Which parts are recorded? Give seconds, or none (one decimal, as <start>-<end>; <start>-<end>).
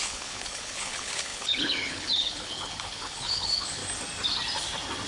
3.8-5.1